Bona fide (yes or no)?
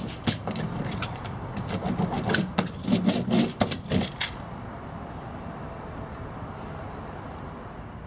yes